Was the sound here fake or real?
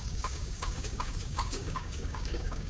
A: fake